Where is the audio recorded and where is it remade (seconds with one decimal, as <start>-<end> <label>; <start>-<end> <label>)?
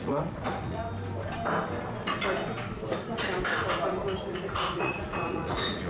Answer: 0.0-0.8 remade; 0.8-4.3 recorded; 4.3-5.9 remade